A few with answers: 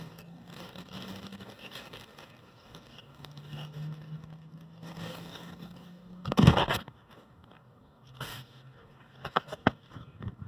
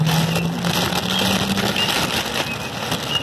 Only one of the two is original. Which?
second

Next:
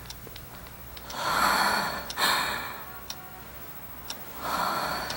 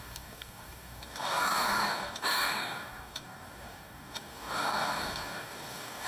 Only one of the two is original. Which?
first